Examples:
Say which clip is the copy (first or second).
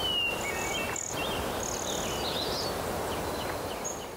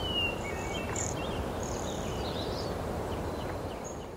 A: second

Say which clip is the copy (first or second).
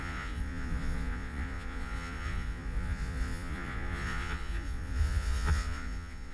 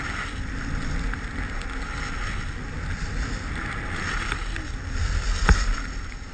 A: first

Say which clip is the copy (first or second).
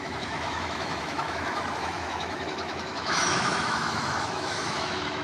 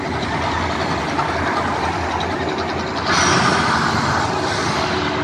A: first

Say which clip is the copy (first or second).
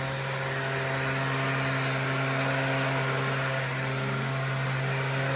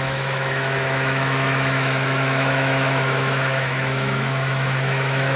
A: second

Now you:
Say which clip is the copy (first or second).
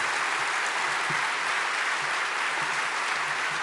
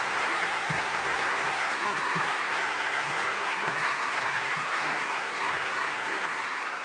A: second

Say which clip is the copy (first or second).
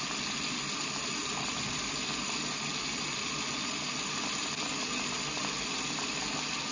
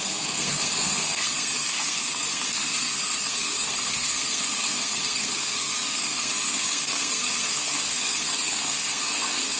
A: second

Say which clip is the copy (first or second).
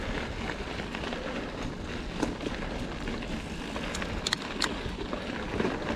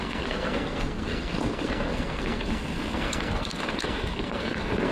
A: second